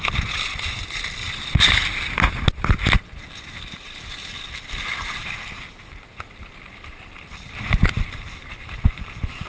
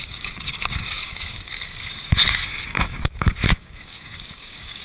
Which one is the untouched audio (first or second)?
first